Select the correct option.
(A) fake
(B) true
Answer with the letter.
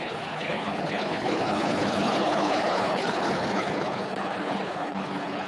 A